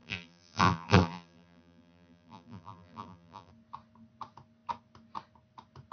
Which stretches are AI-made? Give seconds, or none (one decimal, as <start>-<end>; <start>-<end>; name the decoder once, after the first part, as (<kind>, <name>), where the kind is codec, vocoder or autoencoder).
0.0-3.5 (vocoder, BigVGAN v2)